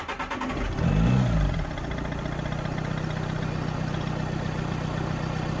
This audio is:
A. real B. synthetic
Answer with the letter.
A